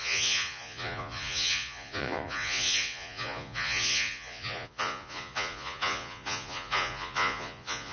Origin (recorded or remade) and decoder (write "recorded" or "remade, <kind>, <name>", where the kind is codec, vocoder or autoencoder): remade, vocoder, Vocos